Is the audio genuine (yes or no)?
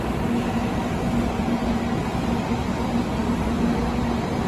yes